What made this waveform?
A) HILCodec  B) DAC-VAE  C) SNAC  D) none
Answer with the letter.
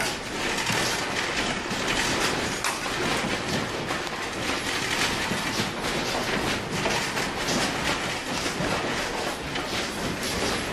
D